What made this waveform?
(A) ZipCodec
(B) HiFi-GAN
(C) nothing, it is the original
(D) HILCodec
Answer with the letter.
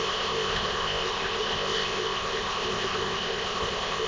A